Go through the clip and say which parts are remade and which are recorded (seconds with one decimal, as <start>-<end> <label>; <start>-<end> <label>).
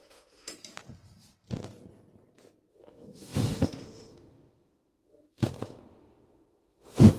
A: 0.0-0.5 remade; 0.5-2.7 recorded; 2.7-7.2 remade